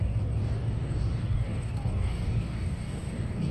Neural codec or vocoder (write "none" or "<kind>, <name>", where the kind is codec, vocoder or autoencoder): codec, DAC